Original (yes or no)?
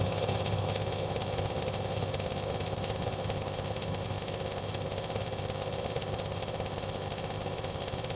no